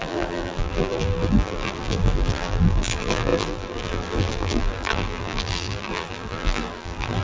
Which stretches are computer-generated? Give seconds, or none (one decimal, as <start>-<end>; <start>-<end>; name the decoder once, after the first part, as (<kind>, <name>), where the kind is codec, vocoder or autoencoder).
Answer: 0.0-7.2 (vocoder, BigVGAN v2)